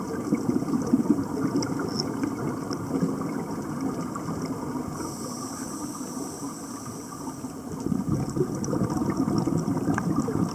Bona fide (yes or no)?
yes